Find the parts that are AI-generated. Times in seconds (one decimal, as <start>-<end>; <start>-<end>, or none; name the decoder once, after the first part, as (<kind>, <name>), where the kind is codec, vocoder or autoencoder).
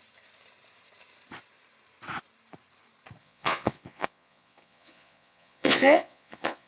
3.2-6.7 (vocoder, Vocos)